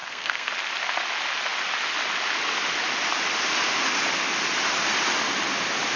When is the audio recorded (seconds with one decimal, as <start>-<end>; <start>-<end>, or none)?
0.5-6.0